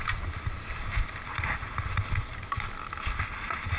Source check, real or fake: fake